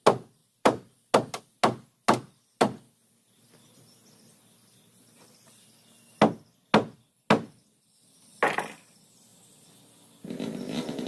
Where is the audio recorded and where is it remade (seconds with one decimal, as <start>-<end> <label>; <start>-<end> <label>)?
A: 0.0-0.4 recorded; 0.4-1.1 remade; 1.1-8.3 recorded; 8.3-8.9 remade; 8.9-11.1 recorded